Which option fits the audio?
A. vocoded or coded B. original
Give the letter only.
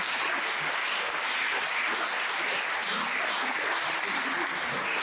B